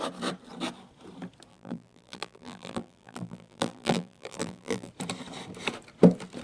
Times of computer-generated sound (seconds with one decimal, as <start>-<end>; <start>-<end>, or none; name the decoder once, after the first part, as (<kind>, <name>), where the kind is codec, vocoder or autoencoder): 1.5-4.9 (vocoder, BigVGAN v2)